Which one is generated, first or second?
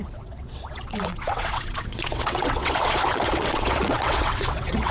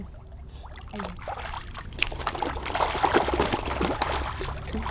first